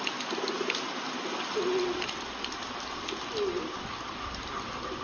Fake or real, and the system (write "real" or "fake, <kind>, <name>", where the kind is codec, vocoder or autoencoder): real